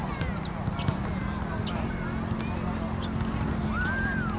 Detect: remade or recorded recorded